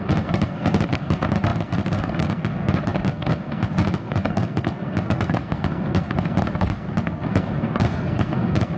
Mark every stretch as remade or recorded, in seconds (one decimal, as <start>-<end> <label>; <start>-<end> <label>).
0.0-8.8 remade